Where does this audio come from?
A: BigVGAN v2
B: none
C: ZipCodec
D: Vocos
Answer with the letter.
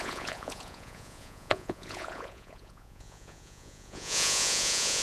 D